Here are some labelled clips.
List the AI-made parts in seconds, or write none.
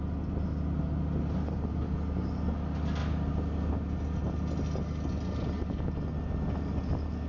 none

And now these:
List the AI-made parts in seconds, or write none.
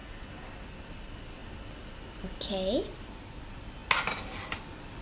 none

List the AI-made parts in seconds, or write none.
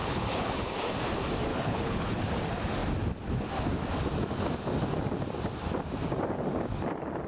0.0-0.8 (codec, HILCodec); 1.5-2.2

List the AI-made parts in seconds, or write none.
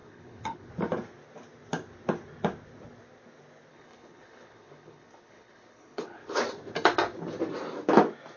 0.0-0.7 (codec, HILCodec); 3.7-6.4